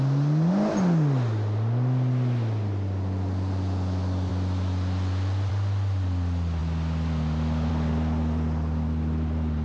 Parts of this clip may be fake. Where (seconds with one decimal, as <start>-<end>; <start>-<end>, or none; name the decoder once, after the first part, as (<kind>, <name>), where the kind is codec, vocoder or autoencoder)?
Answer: none